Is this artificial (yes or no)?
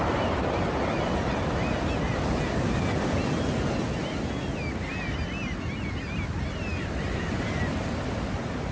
no